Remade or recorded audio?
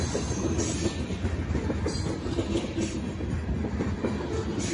recorded